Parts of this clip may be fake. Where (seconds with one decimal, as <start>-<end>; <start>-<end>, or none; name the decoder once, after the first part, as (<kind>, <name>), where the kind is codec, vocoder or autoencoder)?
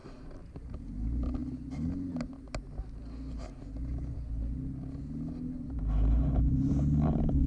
none